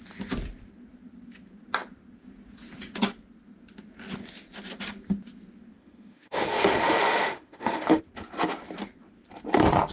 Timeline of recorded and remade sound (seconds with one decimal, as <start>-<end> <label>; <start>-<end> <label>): 0.0-5.8 recorded; 5.8-8.0 remade; 8.0-9.9 recorded